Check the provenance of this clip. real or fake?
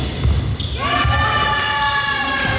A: real